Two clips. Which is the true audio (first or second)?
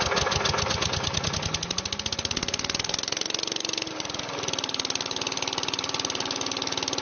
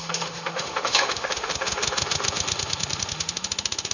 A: first